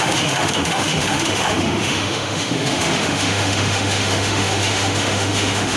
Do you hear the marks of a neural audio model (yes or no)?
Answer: yes